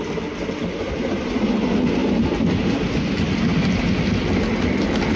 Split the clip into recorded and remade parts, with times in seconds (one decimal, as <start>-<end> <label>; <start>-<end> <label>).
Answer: 0.0-0.6 recorded; 0.6-1.4 remade; 1.4-5.2 recorded